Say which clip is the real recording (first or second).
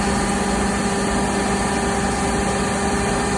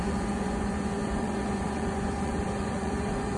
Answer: first